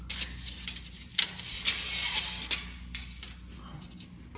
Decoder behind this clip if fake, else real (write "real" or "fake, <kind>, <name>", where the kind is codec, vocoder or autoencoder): real